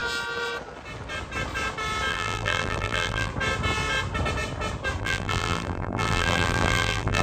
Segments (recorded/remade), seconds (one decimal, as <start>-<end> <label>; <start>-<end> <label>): 0.0-2.1 recorded; 2.1-3.3 remade; 3.3-5.0 recorded; 5.0-7.2 remade